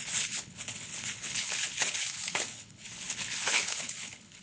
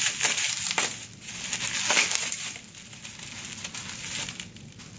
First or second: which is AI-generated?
first